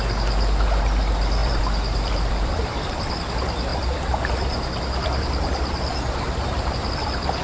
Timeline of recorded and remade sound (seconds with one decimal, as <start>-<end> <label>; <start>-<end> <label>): 0.0-1.4 recorded; 1.4-3.3 remade; 3.3-3.7 recorded; 3.7-6.9 remade; 6.9-7.4 recorded